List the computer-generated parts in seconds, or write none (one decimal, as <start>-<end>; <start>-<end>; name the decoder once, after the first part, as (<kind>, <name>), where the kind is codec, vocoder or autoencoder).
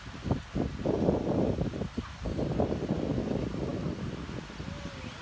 none